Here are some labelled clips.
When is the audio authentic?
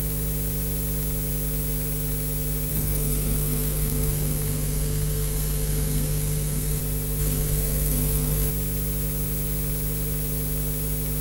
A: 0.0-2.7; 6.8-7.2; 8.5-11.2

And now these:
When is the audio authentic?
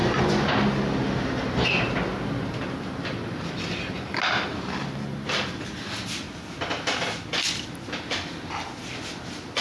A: 0.5-9.6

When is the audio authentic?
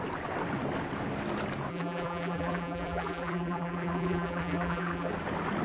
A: 0.0-1.7; 5.1-5.6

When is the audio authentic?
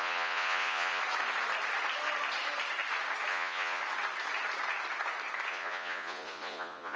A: 1.0-3.3; 3.8-5.5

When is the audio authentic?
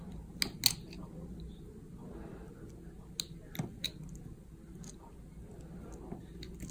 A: 0.0-6.7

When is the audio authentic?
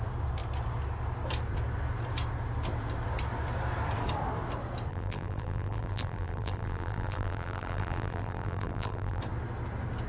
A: 0.0-4.9; 9.2-10.1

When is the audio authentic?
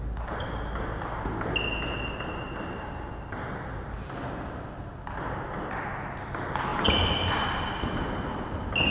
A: 0.0-8.9